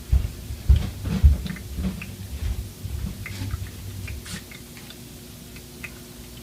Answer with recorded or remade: recorded